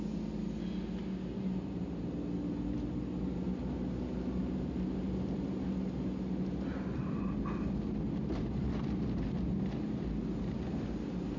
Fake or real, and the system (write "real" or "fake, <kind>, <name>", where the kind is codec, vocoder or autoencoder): real